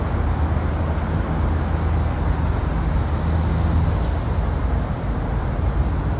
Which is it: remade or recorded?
recorded